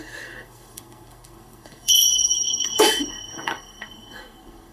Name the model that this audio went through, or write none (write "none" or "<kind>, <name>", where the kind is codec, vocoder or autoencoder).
codec, SNAC